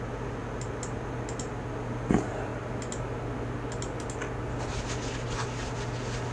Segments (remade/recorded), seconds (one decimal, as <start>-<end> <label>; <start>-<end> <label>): 0.0-6.3 recorded